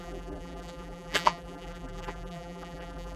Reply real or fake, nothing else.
fake